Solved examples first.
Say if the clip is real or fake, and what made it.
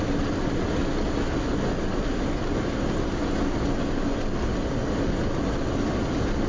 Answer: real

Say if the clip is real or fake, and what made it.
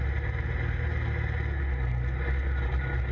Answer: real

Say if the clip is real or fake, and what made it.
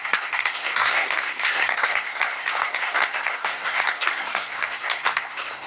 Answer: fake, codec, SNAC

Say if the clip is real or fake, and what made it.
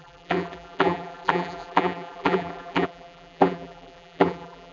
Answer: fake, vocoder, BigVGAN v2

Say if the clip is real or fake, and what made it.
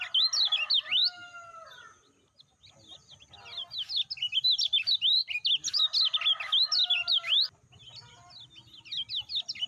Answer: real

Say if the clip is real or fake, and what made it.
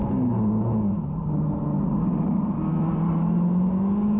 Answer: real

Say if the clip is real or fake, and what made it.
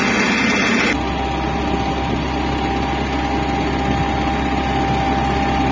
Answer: real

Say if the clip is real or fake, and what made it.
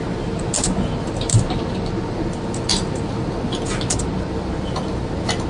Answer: real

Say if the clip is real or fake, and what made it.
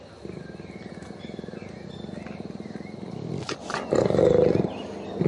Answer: real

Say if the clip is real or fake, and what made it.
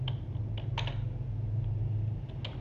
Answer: real